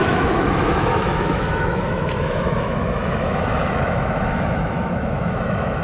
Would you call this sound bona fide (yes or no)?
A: no